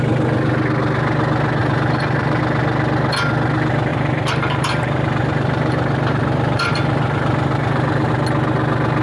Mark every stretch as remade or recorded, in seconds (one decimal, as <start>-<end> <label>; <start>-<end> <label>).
0.0-1.6 recorded; 1.6-2.4 remade; 2.4-3.9 recorded; 3.9-8.1 remade; 8.1-9.0 recorded